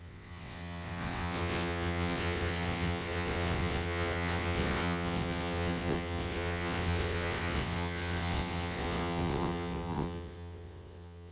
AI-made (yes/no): yes